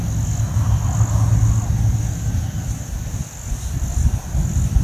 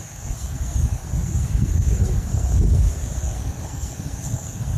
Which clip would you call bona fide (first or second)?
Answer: first